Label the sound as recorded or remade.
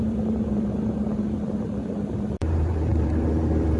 remade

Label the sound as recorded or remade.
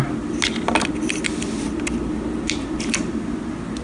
recorded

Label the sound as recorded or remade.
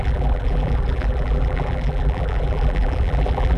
remade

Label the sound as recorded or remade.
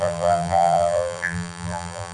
remade